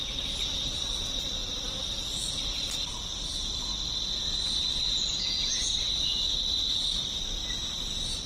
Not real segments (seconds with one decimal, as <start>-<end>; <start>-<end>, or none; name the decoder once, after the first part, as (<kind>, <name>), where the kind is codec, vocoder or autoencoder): 0.0-6.3 (vocoder, BigVGAN v2); 7.0-8.3